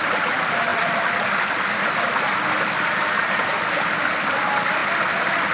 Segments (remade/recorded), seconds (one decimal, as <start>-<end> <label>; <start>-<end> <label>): 0.0-5.5 recorded